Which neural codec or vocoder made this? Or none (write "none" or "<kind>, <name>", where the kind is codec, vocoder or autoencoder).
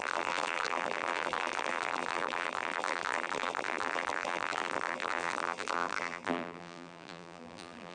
vocoder, BigVGAN v2